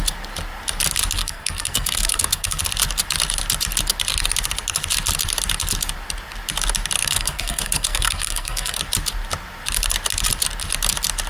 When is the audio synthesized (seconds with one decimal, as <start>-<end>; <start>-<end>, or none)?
1.2-2.6; 7.0-8.8